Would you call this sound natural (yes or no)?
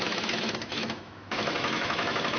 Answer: no